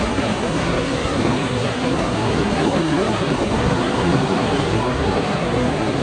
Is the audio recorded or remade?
remade